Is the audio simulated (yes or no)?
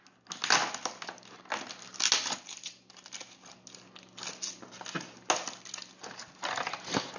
no